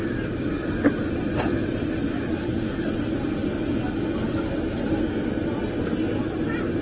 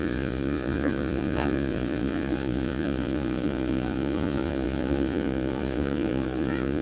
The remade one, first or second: second